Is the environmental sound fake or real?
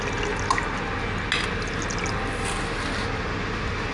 real